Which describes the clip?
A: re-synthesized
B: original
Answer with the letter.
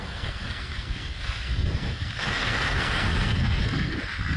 A